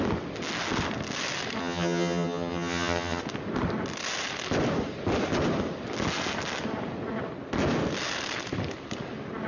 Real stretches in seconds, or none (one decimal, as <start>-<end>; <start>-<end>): 0.0-1.6; 3.2-9.5

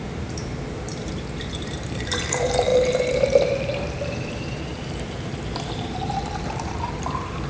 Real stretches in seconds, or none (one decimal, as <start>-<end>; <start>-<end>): none

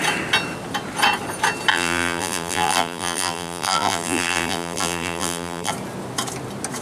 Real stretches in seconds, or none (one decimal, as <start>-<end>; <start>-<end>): 0.0-1.7; 5.7-6.8